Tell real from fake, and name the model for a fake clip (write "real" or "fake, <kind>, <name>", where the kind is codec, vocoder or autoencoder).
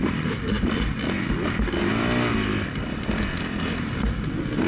real